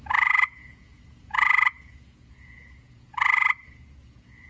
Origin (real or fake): fake